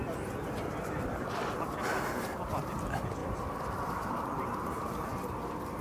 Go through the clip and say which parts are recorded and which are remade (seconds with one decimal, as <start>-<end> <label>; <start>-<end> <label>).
0.0-3.2 recorded; 3.2-4.4 remade; 4.4-5.8 recorded